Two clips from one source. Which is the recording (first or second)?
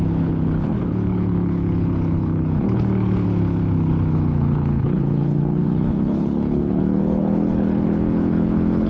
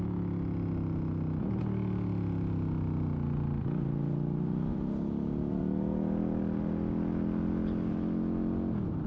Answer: second